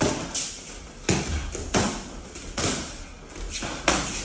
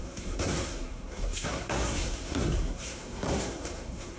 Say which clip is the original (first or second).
first